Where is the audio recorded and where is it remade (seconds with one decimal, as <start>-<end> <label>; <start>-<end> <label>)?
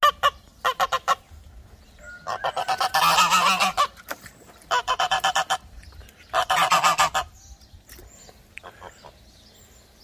0.0-10.0 recorded